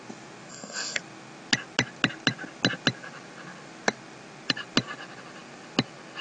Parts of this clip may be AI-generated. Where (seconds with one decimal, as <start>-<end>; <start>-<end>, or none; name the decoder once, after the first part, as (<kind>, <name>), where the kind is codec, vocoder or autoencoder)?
0.5-1.0 (codec, SNAC)